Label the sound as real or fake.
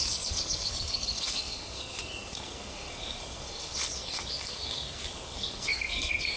fake